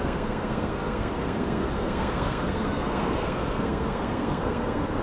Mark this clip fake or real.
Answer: fake